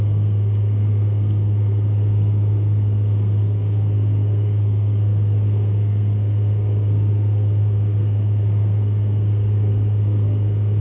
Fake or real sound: fake